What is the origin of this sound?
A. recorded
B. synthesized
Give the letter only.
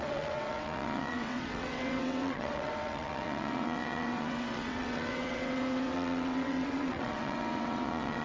B